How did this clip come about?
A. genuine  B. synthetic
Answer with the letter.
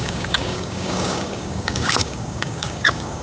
B